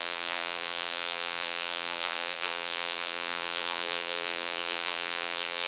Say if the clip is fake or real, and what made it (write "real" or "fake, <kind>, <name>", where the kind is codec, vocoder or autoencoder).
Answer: fake, vocoder, BigVGAN v2